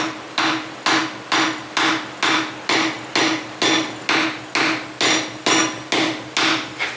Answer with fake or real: real